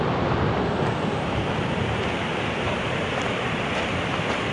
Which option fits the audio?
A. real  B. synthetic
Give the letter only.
A